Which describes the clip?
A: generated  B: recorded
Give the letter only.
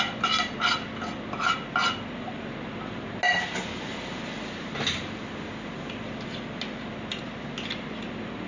B